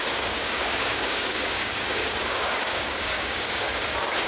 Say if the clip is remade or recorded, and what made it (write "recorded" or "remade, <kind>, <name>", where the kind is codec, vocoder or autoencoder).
remade, codec, DAC